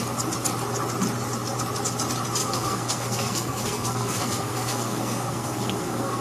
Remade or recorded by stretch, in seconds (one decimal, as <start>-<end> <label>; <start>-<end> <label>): 0.0-2.4 recorded; 2.4-6.2 remade